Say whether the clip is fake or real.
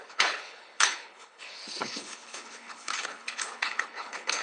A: fake